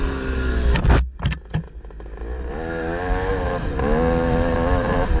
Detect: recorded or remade recorded